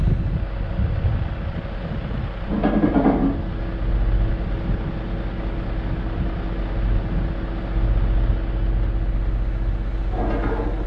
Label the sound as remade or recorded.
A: recorded